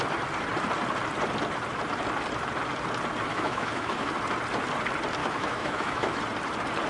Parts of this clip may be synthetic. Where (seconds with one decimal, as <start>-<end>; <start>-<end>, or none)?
3.3-4.1; 5.2-6.2